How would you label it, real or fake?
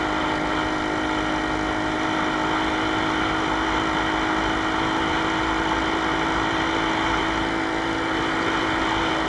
real